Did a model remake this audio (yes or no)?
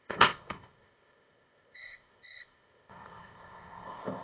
yes